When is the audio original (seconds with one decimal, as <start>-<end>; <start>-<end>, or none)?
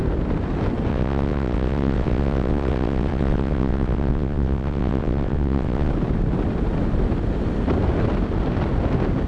0.0-0.9; 5.9-9.3